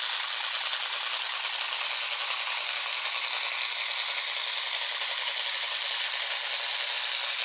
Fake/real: real